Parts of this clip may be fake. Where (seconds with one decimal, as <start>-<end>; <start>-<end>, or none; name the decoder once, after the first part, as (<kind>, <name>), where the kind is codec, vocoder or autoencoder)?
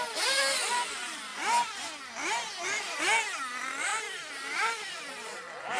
none